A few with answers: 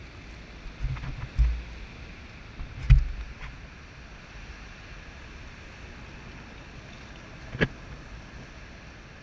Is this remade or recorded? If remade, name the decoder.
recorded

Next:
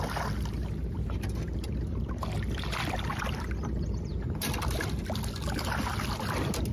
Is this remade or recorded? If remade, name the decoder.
recorded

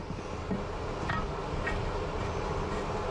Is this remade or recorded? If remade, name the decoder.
recorded